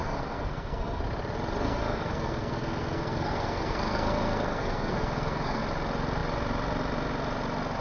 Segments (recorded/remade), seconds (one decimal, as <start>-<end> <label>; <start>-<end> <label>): 0.0-1.0 remade; 1.0-1.6 recorded; 1.6-5.6 remade; 5.6-7.8 recorded